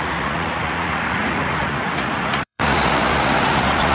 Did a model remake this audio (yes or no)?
yes